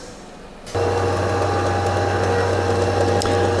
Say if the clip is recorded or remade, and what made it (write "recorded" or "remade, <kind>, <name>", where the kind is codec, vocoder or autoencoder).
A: recorded